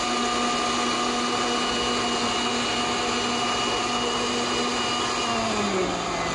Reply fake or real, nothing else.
real